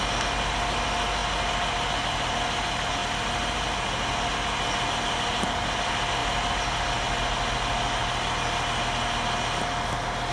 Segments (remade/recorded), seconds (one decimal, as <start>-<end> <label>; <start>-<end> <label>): 0.0-10.3 recorded